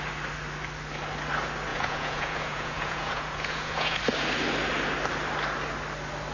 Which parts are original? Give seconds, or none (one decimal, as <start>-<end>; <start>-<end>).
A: 0.0-1.7; 4.0-6.3